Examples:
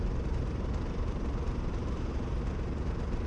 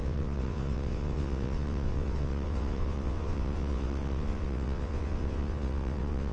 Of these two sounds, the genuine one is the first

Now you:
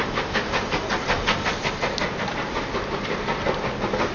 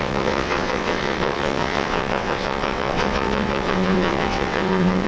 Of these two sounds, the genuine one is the first